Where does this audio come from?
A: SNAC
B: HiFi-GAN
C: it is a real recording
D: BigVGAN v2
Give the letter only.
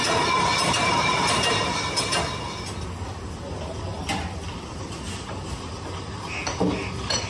C